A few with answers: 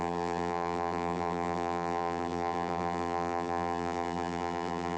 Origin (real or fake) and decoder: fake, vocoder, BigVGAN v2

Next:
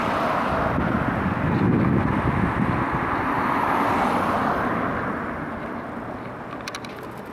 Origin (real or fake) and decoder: real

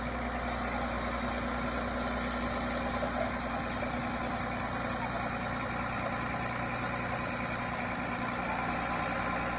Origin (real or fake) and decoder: real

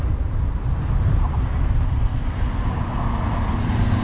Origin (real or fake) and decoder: real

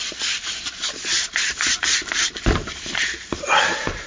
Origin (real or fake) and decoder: fake, vocoder, BigVGAN v2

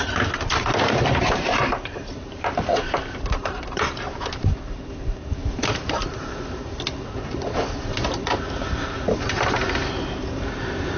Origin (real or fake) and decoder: fake, vocoder, BigVGAN v2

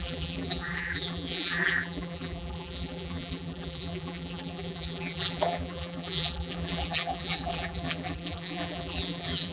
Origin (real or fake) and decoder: fake, vocoder, BigVGAN v2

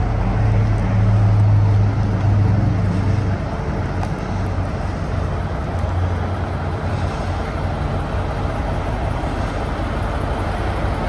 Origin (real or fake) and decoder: real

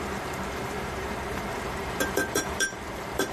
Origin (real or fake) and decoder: fake, vocoder, BigVGAN v2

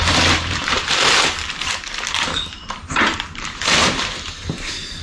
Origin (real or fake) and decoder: fake, vocoder, BigVGAN v2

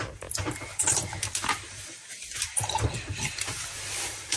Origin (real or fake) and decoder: real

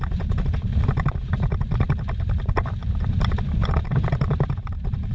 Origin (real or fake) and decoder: fake, vocoder, BigVGAN v2